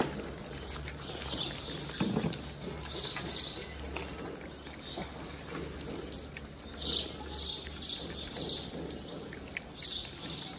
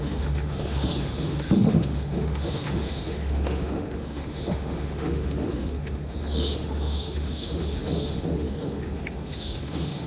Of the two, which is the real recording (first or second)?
first